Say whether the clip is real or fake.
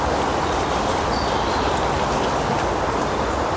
real